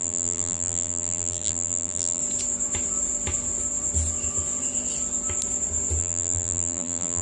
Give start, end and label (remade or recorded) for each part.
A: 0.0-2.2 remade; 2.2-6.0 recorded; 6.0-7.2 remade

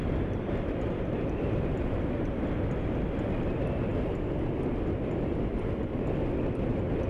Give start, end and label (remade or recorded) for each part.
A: 0.0-2.4 remade; 2.4-7.1 recorded

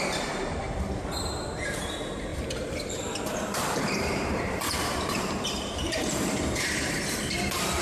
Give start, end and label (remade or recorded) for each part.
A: 0.0-7.8 remade

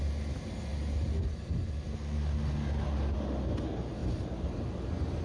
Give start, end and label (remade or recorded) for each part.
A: 0.0-4.0 recorded; 4.0-5.2 remade